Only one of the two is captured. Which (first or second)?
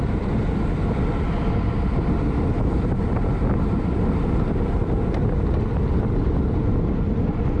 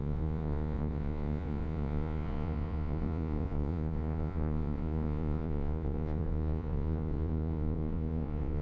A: first